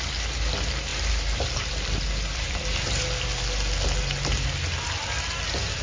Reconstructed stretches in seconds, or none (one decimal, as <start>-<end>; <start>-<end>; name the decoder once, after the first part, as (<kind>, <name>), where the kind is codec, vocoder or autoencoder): 0.9-2.9 (vocoder, BigVGAN v2)